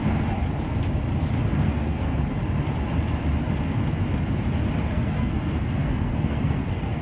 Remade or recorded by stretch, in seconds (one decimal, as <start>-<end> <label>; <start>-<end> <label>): 0.0-1.6 recorded; 1.6-2.4 remade; 2.4-4.9 recorded; 4.9-7.0 remade